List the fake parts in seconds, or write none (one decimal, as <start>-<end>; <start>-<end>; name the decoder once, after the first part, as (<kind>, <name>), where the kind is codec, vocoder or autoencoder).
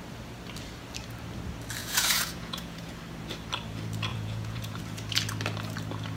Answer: 1.8-3.0 (vocoder, Vocos); 4.1-4.8